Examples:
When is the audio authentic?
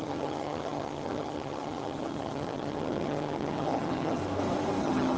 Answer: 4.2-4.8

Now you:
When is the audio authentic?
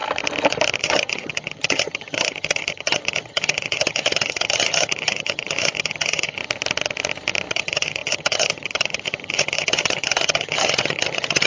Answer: 0.0-0.8; 6.4-7.5